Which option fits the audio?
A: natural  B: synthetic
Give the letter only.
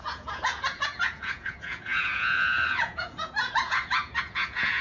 B